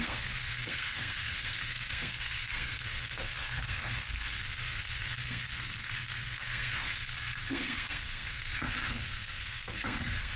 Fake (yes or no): yes